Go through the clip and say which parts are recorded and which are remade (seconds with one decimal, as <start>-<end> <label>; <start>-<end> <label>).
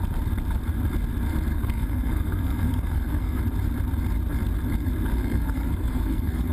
0.0-1.5 recorded; 1.5-3.4 remade; 3.4-5.1 recorded; 5.1-6.5 remade